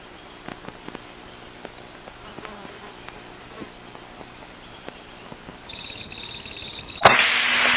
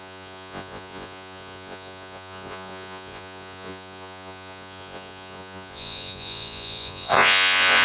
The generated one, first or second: second